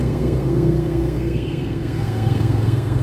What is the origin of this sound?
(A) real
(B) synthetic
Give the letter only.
B